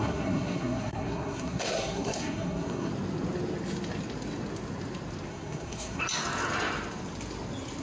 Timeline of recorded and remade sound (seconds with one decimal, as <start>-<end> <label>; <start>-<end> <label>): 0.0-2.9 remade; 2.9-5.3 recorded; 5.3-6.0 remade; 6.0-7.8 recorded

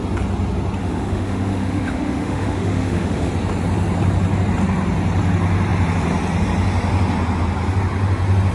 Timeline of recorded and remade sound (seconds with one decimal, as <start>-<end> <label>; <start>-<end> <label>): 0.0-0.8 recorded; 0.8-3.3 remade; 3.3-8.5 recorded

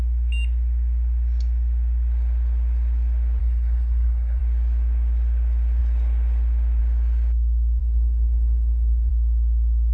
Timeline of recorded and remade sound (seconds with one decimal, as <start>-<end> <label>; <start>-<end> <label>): 0.0-3.4 recorded; 3.4-4.4 remade; 4.4-7.8 recorded; 7.8-9.1 remade; 9.1-9.9 recorded

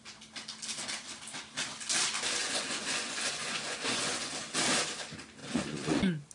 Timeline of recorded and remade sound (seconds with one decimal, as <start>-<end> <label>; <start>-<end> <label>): 0.0-2.4 recorded; 2.4-4.3 remade; 4.3-5.4 recorded; 5.4-6.3 remade